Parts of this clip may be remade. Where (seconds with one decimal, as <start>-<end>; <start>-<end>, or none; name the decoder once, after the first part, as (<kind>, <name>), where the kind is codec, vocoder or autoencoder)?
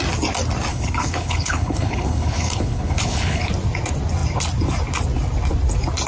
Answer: 0.7-3.5 (codec, HILCodec)